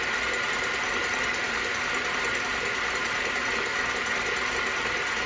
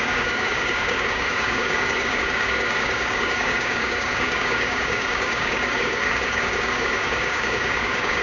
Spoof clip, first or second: second